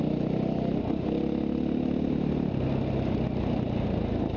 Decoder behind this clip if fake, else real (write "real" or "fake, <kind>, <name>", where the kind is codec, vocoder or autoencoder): real